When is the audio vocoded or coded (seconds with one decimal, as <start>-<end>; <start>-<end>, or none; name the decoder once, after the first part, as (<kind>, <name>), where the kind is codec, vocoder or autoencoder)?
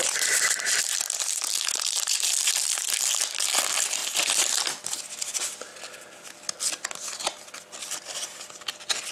none